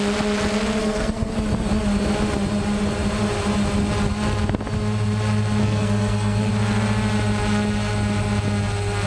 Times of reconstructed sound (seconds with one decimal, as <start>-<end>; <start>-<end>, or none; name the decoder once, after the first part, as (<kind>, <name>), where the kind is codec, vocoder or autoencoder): 0.8-1.3 (codec, SNAC); 5.6-6.5